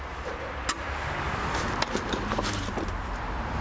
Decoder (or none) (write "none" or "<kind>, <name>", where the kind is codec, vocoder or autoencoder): none